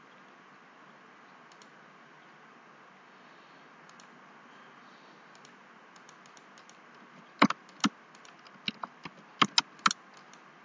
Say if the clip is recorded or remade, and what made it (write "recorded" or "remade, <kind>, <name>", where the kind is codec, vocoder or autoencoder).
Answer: recorded